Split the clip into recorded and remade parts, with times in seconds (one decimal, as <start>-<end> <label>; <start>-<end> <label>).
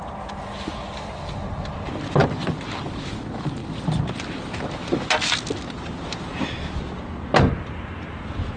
0.0-8.6 recorded